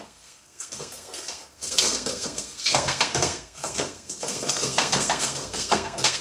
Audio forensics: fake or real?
fake